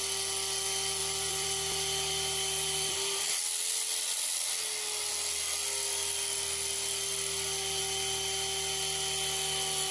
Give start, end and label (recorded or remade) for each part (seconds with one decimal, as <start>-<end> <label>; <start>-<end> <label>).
0.0-1.0 recorded; 1.0-3.4 remade; 3.4-9.9 recorded